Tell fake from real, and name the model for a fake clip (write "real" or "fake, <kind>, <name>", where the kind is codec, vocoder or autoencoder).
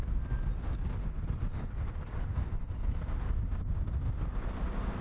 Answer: real